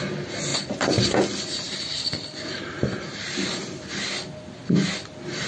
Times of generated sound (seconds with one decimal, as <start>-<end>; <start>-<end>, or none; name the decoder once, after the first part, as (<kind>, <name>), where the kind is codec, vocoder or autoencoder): 0.5-3.8 (vocoder, BigVGAN v2)